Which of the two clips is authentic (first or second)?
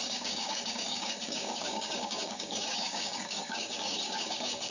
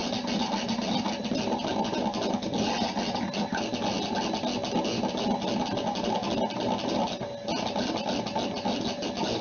second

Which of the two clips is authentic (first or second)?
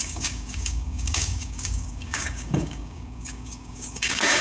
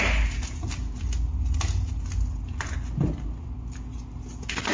second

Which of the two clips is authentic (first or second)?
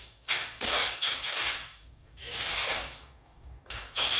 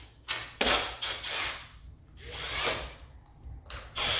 second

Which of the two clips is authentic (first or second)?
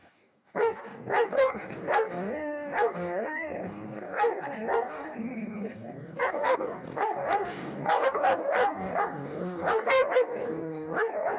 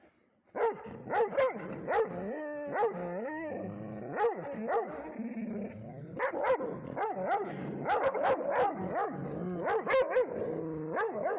second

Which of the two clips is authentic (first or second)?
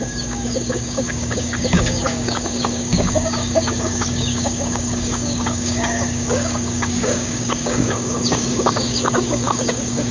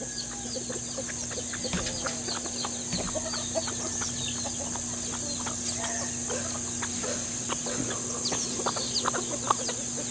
second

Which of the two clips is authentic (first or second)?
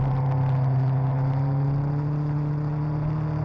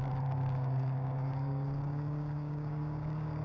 first